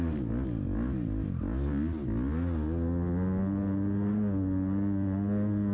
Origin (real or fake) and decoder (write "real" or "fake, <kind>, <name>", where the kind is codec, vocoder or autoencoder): real